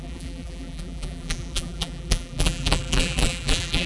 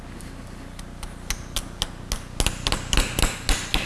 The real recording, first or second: second